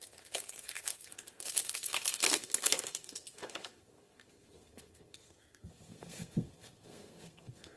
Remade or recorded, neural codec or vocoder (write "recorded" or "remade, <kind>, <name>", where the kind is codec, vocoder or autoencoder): remade, codec, SNAC